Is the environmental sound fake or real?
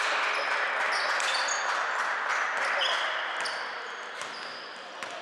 real